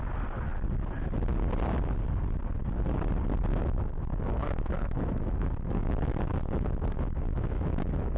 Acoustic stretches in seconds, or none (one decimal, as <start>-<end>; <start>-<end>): 0.0-3.5